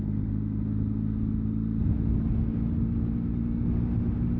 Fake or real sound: real